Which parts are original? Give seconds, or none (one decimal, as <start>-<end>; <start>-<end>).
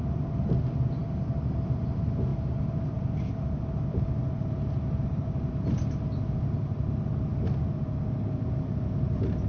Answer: 0.0-9.5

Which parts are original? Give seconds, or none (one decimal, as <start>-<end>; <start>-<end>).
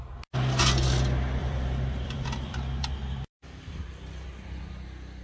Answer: 0.0-1.4; 3.7-5.2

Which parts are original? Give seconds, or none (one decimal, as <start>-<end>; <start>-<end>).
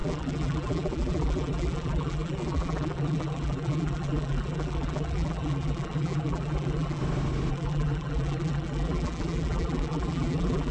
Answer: 7.0-7.5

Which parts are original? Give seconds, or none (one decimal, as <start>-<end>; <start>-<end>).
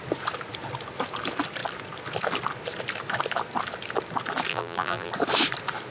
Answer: 0.0-4.5; 5.1-5.9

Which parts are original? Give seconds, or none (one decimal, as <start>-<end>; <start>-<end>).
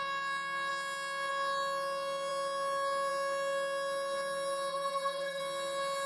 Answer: 0.0-4.7; 5.4-6.1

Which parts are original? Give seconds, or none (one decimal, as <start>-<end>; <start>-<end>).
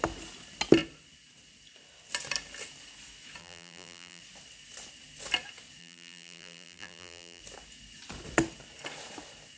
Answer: 0.0-3.4; 4.2-5.8; 7.4-9.6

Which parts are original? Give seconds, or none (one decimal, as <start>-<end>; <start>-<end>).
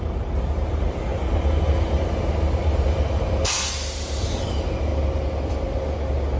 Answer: 0.0-6.4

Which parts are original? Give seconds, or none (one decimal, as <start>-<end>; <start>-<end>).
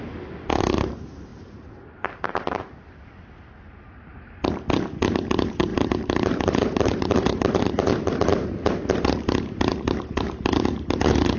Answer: 0.0-1.3; 4.3-5.7; 8.3-9.7